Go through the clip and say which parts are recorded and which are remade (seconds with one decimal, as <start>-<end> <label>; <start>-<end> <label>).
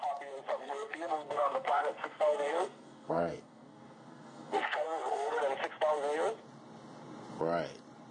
0.0-0.5 recorded; 0.5-5.4 remade; 5.4-8.1 recorded